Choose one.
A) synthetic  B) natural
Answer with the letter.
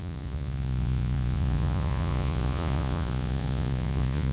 A